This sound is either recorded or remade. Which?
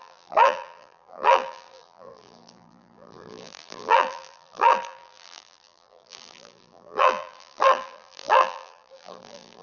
remade